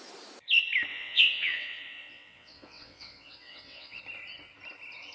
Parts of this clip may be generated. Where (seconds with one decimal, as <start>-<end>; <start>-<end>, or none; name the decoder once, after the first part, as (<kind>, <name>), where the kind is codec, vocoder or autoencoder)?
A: 0.9-4.0 (vocoder, WaveNeXt)